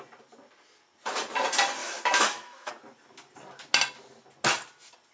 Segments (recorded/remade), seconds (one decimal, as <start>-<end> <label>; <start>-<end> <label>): 0.0-1.8 recorded; 1.8-2.7 remade; 2.7-5.1 recorded